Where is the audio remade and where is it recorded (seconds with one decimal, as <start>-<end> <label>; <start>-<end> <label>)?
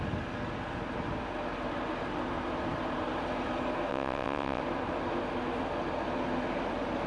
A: 0.0-3.9 recorded; 3.9-4.6 remade; 4.6-7.1 recorded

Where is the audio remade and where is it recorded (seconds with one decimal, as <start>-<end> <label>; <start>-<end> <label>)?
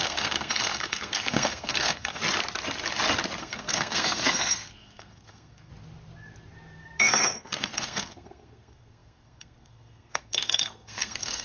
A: 0.0-2.2 remade; 2.2-3.4 recorded; 3.4-5.7 remade; 5.7-7.0 recorded; 7.0-11.4 remade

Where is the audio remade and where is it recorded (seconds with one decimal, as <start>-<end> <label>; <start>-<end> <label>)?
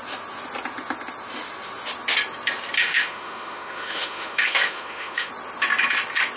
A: 0.0-2.8 recorded; 2.8-5.3 remade; 5.3-6.4 recorded